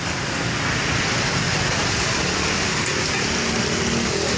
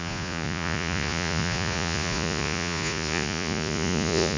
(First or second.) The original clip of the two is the first